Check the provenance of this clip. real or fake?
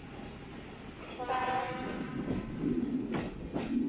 real